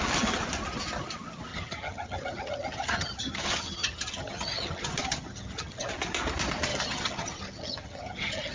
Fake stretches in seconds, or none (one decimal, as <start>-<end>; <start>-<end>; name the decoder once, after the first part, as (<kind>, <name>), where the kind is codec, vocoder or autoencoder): 1.5-5.9 (vocoder, HiFi-GAN); 6.7-8.5